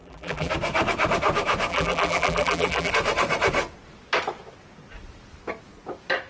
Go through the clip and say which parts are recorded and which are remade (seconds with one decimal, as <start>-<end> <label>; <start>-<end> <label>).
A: 0.0-0.5 remade; 0.5-1.7 recorded; 1.7-2.9 remade; 2.9-6.3 recorded